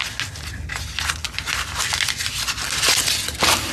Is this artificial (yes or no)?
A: no